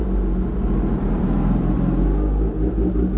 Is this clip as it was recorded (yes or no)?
yes